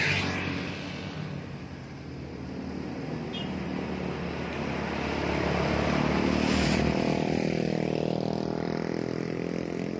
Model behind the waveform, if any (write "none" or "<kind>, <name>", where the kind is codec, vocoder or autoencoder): vocoder, BigVGAN v2